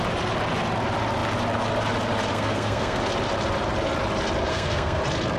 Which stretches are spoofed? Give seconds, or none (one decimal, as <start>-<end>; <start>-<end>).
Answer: 2.3-3.0; 4.5-5.0